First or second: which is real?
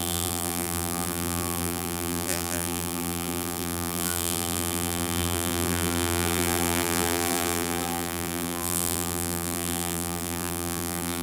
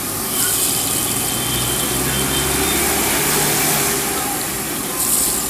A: second